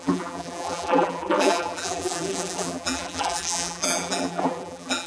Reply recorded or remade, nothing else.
remade